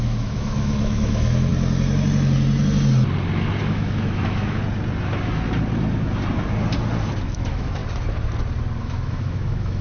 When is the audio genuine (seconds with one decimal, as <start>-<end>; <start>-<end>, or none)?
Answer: 1.5-3.6; 4.6-7.2; 7.8-8.8